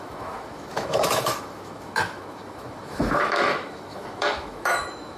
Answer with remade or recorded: remade